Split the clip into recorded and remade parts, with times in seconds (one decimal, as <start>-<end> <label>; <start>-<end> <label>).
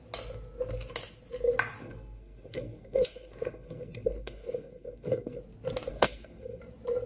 0.0-1.8 recorded; 1.8-5.4 remade; 5.4-5.9 recorded; 5.9-6.6 remade; 6.6-7.1 recorded